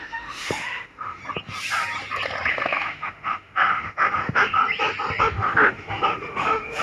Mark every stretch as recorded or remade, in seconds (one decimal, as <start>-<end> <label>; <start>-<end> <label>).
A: 0.0-1.2 remade; 1.2-2.5 recorded; 2.5-4.6 remade; 4.6-5.2 recorded; 5.2-6.8 remade